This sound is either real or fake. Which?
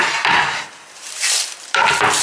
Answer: real